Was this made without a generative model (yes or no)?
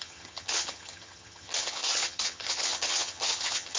no